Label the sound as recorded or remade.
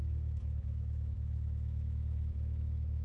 remade